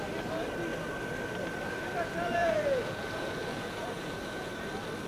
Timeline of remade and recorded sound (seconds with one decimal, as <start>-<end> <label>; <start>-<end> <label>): 0.0-2.4 recorded; 2.4-4.5 remade; 4.5-5.1 recorded